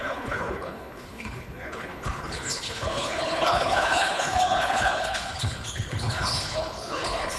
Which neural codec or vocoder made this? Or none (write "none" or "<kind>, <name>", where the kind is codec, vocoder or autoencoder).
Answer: codec, HILCodec